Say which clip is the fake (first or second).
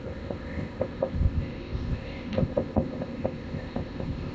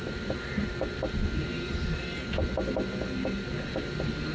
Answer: first